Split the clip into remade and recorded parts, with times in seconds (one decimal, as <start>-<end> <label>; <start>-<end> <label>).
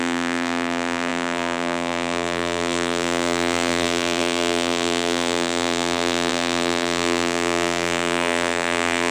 0.0-9.1 remade